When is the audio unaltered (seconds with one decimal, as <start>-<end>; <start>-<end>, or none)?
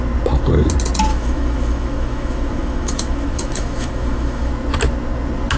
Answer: 0.0-1.1; 4.5-5.6